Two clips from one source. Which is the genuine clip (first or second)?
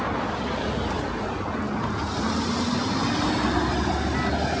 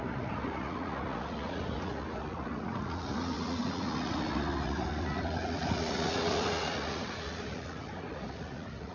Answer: first